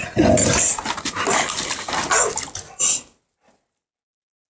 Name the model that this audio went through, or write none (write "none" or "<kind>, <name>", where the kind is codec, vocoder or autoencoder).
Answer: none